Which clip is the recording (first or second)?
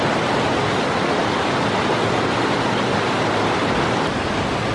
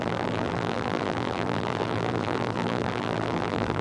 first